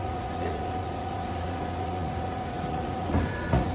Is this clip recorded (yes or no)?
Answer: no